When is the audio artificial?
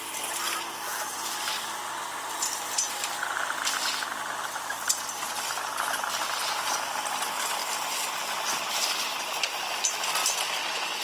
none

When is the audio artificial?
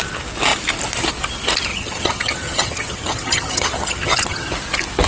1.7-4.5 (vocoder, HiFi-GAN)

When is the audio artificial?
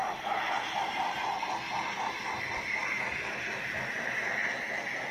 2.8-4.4 (vocoder, BigVGAN v2)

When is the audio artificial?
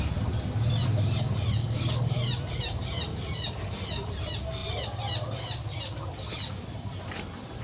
1.6-2.2 (codec, DAC)